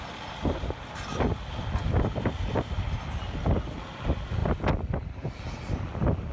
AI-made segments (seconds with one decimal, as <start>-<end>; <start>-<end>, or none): none